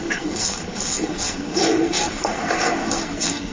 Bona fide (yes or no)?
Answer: no